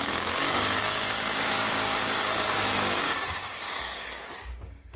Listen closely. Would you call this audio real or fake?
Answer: fake